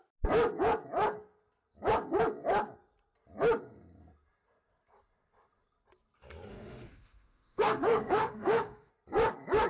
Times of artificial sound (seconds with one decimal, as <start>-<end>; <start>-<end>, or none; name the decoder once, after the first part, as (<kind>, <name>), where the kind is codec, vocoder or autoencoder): 6.5-8.9 (autoencoder, DAC-VAE)